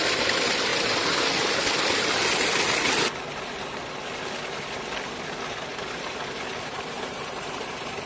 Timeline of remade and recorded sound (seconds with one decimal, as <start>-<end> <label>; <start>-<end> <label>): 0.0-5.7 recorded; 5.7-8.1 remade